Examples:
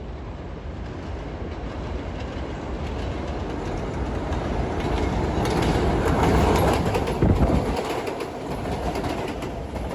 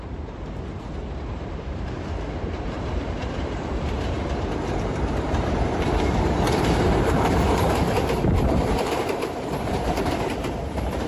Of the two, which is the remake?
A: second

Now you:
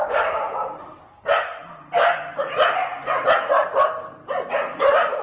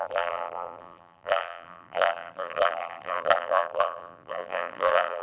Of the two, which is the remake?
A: second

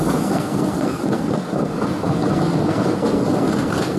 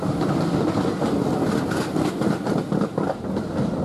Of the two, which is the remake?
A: first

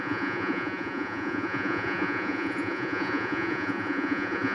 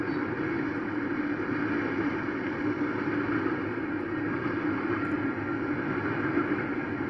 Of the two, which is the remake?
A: first